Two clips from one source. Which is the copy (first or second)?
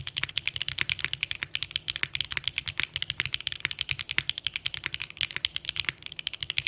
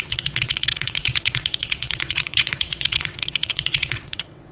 second